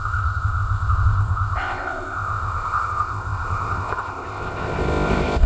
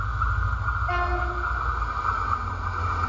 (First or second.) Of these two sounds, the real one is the second